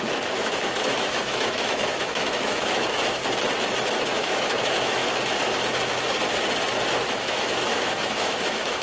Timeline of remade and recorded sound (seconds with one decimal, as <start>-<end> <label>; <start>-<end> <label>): 0.0-3.2 remade; 3.2-4.2 recorded; 4.2-5.0 remade; 5.0-7.1 recorded; 7.1-8.8 remade